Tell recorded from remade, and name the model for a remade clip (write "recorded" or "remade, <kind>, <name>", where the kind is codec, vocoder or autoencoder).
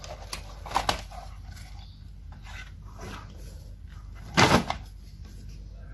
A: recorded